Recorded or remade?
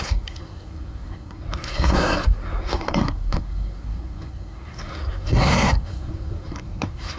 remade